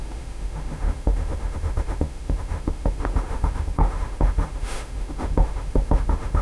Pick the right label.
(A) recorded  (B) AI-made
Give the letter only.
B